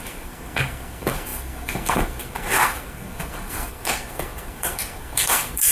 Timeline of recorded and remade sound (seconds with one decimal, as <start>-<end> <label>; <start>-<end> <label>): 0.0-5.7 remade